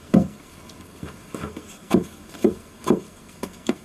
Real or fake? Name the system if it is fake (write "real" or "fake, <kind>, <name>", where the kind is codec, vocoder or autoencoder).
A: fake, codec, SNAC